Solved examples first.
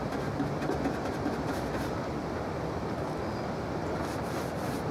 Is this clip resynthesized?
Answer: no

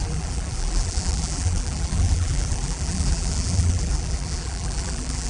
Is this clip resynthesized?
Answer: yes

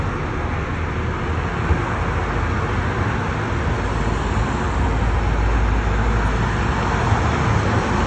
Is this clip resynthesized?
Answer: no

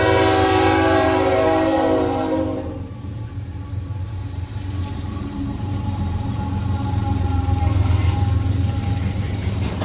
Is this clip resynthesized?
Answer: yes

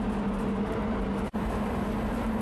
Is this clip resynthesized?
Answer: no